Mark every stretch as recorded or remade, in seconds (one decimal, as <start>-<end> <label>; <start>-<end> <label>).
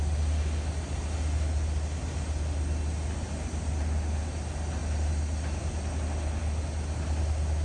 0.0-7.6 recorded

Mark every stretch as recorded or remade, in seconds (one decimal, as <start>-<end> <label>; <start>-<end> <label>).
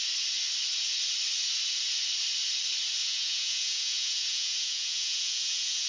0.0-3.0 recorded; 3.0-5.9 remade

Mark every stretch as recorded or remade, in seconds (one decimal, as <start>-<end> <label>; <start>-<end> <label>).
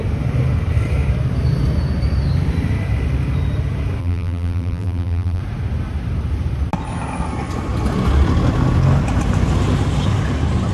0.0-4.0 recorded; 4.0-5.4 remade; 5.4-10.7 recorded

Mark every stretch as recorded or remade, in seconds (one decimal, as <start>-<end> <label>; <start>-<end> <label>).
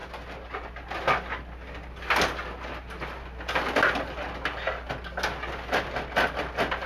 0.0-6.9 recorded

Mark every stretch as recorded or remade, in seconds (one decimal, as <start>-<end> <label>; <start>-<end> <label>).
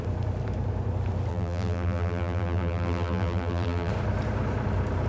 0.0-1.3 recorded; 1.3-3.9 remade; 3.9-5.1 recorded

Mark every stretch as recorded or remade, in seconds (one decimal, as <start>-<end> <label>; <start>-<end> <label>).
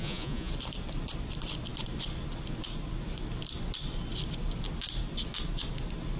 0.0-0.5 remade; 0.5-6.2 recorded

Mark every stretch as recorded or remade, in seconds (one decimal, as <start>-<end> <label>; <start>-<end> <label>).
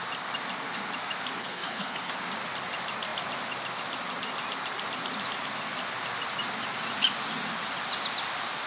0.0-1.4 recorded; 1.4-2.1 remade; 2.1-8.7 recorded